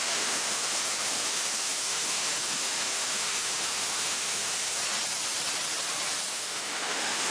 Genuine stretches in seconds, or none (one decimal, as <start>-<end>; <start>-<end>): 4.8-6.3